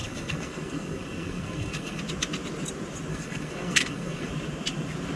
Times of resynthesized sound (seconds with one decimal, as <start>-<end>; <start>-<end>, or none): 0.0-2.0; 3.1-4.3